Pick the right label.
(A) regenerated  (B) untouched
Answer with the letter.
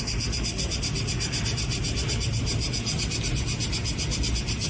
B